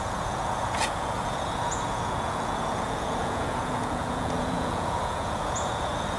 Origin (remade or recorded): remade